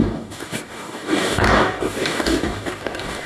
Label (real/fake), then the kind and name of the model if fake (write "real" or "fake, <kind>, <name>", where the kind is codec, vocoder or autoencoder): fake, codec, DAC